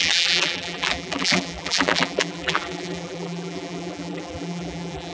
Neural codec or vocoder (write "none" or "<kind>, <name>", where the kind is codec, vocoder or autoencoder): vocoder, BigVGAN v2